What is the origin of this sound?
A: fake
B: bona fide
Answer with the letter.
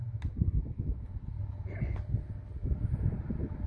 B